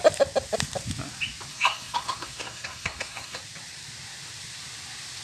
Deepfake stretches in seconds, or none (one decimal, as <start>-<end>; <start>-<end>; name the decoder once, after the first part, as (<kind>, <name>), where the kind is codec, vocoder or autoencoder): 1.5-3.4 (codec, SNAC)